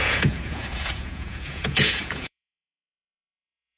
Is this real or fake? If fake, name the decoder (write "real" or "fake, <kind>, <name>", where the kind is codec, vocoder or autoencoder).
fake, vocoder, Vocos